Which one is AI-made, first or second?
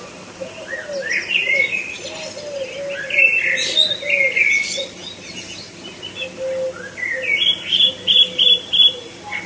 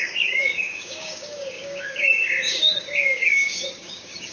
second